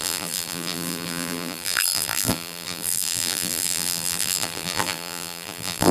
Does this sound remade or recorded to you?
remade